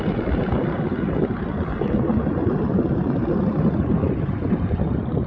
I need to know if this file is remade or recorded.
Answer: remade